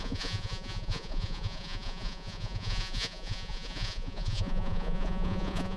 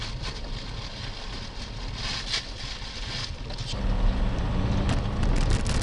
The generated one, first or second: first